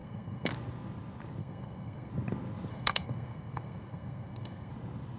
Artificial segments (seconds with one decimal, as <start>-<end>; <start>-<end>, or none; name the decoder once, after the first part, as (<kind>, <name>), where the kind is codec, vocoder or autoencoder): 0.0-0.5 (codec, SNAC); 1.4-2.1; 2.7-4.7